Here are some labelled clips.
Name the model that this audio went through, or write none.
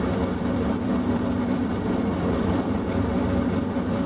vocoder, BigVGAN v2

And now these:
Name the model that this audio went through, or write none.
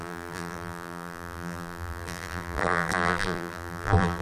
vocoder, BigVGAN v2